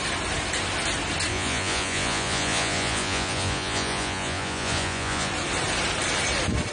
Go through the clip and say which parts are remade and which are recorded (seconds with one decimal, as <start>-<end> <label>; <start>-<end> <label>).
0.0-1.3 recorded; 1.3-5.3 remade; 5.3-6.7 recorded

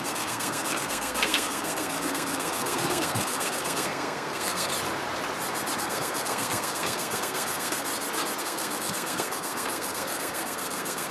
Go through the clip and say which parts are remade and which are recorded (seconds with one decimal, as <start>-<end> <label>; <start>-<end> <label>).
0.0-4.7 remade; 4.7-5.8 recorded; 5.8-7.9 remade; 7.9-8.4 recorded; 8.4-11.1 remade

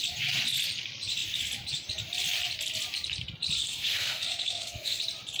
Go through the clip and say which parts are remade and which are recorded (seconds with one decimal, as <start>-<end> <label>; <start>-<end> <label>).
0.0-3.6 recorded; 3.6-5.0 remade; 5.0-5.4 recorded

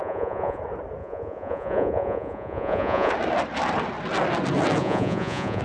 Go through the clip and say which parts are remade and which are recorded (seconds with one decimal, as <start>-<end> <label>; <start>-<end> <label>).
0.0-0.6 remade; 0.6-1.0 recorded; 1.0-3.1 remade; 3.1-4.8 recorded; 4.8-5.6 remade

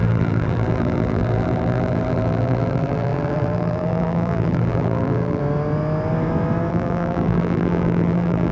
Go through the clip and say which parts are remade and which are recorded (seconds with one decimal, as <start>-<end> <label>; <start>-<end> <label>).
0.0-5.4 remade; 5.4-6.7 recorded; 6.7-8.5 remade

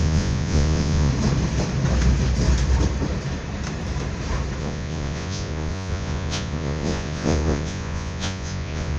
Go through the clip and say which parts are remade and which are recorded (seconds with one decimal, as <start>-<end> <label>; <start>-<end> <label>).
0.0-1.1 remade; 1.1-4.6 recorded; 4.6-9.0 remade